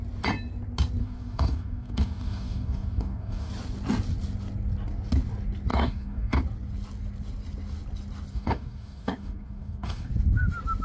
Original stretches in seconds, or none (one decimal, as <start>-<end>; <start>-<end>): 0.0-1.0; 3.5-5.7; 6.4-8.3; 10.1-10.8